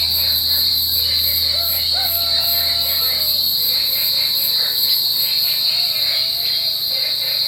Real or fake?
real